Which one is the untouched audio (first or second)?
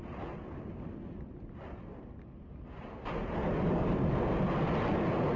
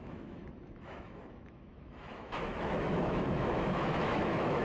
first